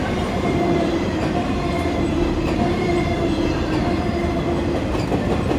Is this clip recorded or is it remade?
recorded